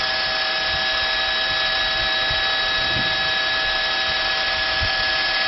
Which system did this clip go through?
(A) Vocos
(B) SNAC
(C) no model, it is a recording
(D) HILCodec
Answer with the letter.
C